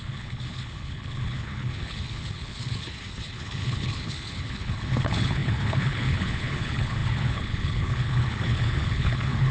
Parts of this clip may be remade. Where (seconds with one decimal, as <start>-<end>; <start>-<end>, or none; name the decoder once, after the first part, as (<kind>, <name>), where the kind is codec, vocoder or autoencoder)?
0.0-9.5 (codec, HILCodec)